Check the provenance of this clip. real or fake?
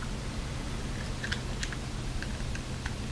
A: real